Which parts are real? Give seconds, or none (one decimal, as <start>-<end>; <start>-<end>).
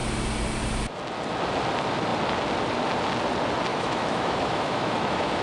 0.0-3.7